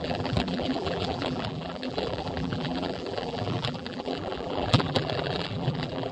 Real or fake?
fake